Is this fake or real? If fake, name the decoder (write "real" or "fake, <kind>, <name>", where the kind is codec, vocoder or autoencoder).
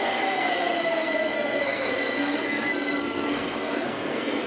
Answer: fake, codec, SNAC